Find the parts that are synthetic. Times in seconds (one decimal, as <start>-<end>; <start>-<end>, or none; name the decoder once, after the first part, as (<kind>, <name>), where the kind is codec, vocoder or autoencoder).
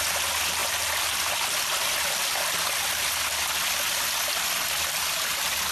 0.6-3.5 (vocoder, BigVGAN v2)